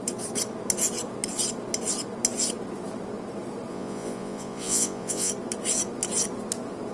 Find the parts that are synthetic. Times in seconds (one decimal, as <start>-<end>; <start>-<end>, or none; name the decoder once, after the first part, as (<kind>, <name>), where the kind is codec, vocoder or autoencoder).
3.7-5.3 (vocoder, Vocos)